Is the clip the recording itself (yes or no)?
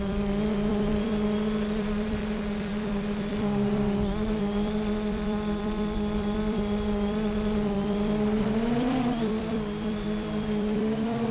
no